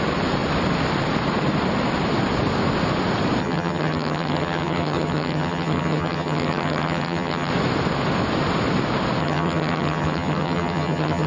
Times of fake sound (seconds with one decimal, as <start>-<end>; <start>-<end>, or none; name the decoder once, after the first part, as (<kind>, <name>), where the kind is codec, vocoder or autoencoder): 3.4-7.5 (vocoder, HiFi-GAN); 9.2-11.3